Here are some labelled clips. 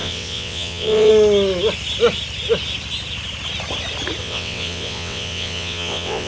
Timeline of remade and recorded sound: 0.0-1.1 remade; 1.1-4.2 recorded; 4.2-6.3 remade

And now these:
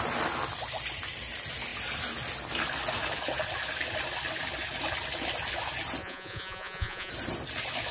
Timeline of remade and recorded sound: 0.0-6.0 recorded; 6.0-7.1 remade; 7.1-7.9 recorded

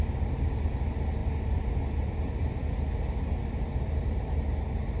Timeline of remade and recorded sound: 0.0-5.0 recorded

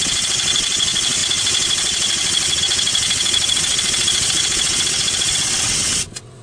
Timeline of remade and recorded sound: 0.0-6.4 remade

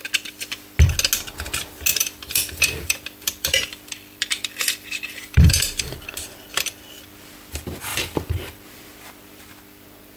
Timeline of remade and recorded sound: 0.0-1.9 recorded; 1.9-6.8 remade; 6.8-7.9 recorded; 7.9-8.6 remade; 8.6-10.2 recorded

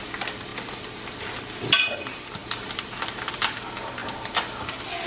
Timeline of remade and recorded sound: 0.0-5.1 recorded